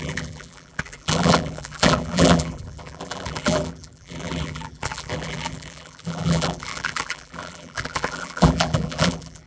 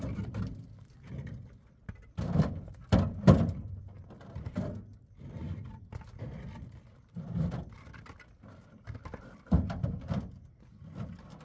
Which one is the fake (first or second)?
first